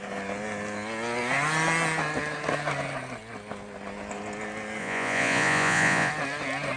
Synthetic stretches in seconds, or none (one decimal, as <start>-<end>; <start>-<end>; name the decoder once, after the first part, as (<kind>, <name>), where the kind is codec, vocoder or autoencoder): 4.8-6.1 (vocoder, Vocos)